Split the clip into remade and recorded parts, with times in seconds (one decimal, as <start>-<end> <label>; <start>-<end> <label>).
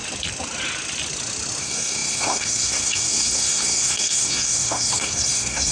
0.0-1.6 recorded; 1.6-5.7 remade